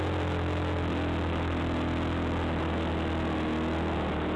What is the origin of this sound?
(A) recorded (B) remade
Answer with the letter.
A